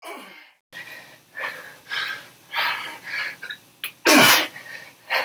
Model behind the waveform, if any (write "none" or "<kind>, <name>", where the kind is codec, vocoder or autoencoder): none